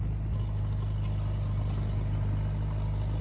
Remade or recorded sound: recorded